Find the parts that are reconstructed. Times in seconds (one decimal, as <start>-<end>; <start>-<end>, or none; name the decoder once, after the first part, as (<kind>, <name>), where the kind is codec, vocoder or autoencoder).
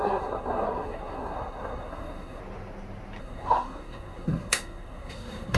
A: 0.0-2.4 (codec, SNAC); 3.2-5.6